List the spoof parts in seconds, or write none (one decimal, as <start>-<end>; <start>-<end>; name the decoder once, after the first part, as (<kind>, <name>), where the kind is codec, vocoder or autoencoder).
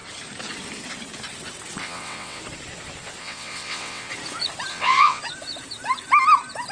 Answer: 1.8-2.4 (vocoder, WaveNeXt); 3.2-4.1; 4.7-5.2